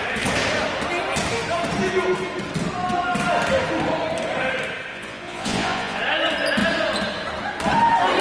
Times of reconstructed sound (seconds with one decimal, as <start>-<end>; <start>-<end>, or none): 4.9-6.0